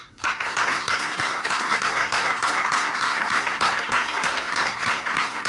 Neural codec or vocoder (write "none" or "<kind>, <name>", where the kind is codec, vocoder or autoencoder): codec, SNAC